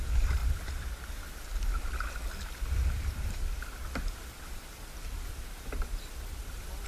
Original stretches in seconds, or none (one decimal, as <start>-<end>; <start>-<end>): 0.0-6.9